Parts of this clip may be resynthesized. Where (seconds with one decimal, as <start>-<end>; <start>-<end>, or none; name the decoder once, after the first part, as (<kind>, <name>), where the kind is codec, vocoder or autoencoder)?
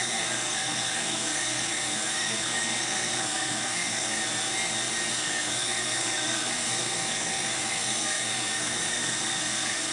0.0-4.2 (codec, SNAC); 5.1-9.9